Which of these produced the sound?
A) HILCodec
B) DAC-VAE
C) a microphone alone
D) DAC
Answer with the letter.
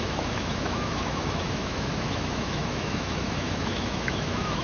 B